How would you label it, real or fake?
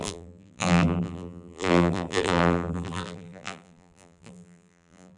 fake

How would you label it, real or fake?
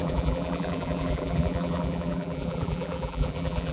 fake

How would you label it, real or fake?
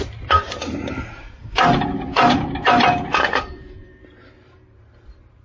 fake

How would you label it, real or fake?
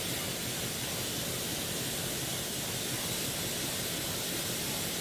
real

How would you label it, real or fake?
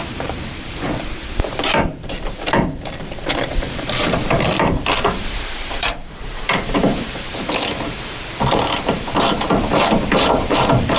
fake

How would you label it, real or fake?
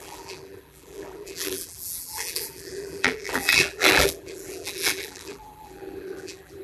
fake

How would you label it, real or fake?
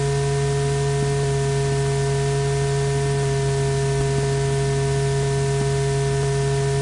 real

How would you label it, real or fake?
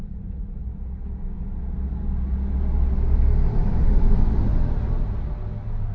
real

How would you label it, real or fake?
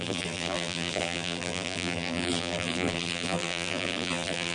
fake